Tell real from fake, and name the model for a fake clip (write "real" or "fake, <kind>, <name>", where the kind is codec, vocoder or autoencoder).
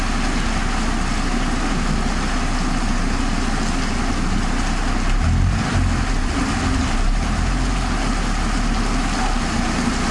real